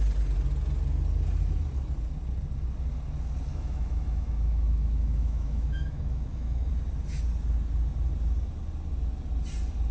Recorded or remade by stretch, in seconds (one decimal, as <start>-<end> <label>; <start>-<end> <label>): 0.0-3.5 recorded; 3.5-6.7 remade; 6.7-9.9 recorded